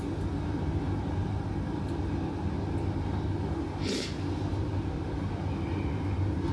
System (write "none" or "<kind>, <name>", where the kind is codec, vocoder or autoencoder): none